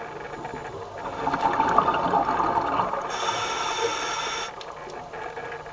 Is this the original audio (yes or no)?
yes